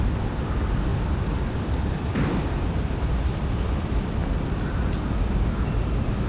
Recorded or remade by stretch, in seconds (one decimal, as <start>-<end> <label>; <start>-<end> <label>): 0.0-6.3 recorded